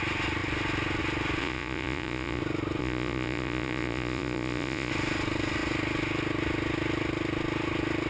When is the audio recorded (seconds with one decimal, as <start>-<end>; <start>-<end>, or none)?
0.0-1.4; 2.4-2.8; 4.9-8.1